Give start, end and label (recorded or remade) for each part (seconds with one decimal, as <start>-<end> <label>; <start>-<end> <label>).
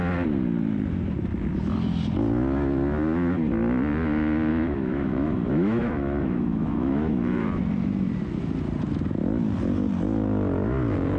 0.0-4.5 recorded; 4.5-7.6 remade; 7.6-11.2 recorded